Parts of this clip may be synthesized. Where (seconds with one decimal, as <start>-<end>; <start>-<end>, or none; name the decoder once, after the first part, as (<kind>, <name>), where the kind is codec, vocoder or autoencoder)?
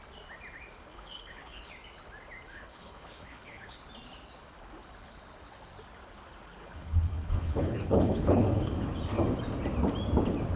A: 0.9-1.7 (codec, HILCodec); 2.5-3.8; 6.6-8.7